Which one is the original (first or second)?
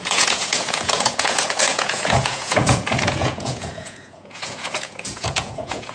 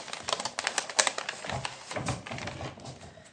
second